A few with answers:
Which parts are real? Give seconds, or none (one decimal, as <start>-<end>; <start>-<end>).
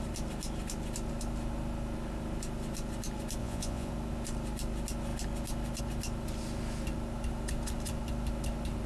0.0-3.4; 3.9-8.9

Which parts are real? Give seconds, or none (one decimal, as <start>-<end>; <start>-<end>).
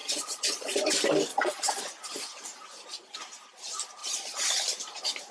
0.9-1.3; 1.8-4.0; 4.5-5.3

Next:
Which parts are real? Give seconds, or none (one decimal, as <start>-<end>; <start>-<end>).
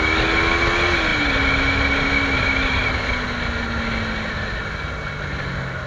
0.0-5.9